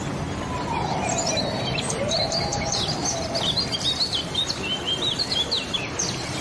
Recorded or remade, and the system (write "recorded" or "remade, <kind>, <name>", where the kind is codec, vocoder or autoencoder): recorded